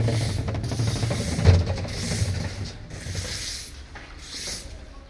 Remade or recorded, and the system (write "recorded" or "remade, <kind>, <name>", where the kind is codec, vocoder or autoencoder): recorded